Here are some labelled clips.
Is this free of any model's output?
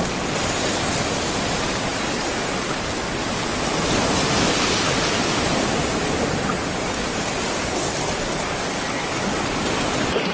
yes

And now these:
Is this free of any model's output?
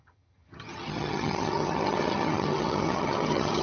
no